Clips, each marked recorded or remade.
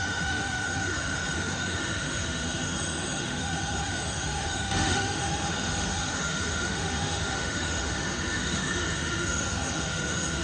remade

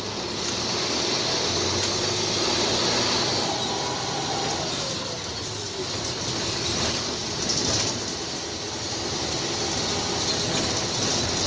recorded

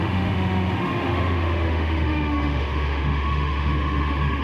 remade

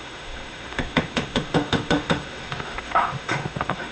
remade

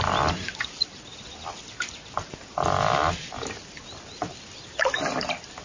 recorded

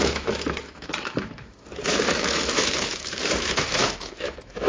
remade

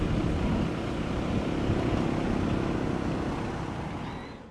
recorded